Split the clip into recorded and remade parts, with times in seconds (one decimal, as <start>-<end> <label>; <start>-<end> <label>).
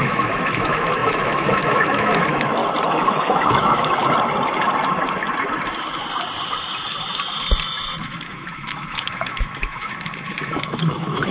0.0-2.6 remade; 2.6-3.1 recorded; 3.1-4.0 remade; 4.0-8.0 recorded; 8.0-11.3 remade